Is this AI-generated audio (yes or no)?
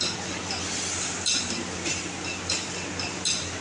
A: no